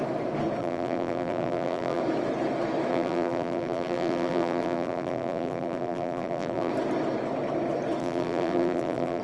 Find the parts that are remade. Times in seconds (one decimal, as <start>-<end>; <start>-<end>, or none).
0.6-2.0; 2.9-6.7; 8.0-9.2